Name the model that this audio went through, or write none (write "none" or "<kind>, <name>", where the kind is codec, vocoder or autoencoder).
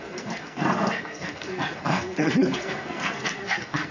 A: codec, SNAC